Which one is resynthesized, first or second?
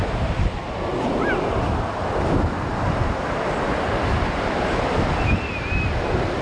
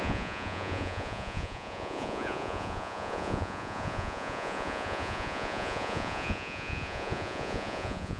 second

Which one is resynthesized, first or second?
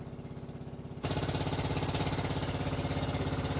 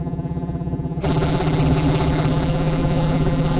second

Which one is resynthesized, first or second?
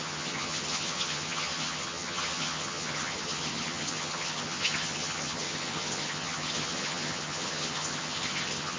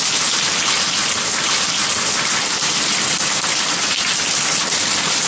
first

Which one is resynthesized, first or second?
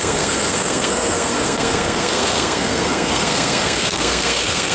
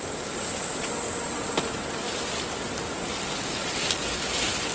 first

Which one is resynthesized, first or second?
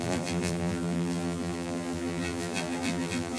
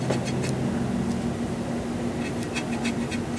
first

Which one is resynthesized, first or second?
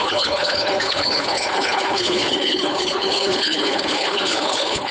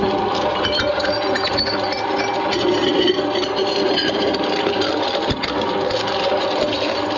first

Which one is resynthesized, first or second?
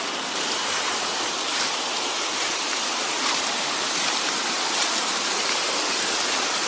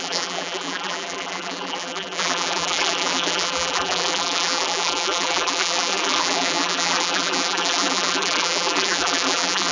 second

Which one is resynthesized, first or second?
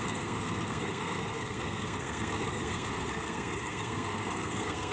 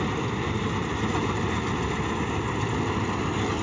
first